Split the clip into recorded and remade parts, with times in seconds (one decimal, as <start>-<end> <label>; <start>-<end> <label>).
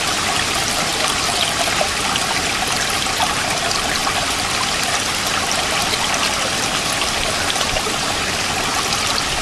0.0-9.4 recorded